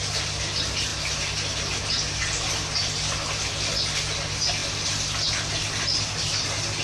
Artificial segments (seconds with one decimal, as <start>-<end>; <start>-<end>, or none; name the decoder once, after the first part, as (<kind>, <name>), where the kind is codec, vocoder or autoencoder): none